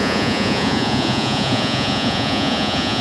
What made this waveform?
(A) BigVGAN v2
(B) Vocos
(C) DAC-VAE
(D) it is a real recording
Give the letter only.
B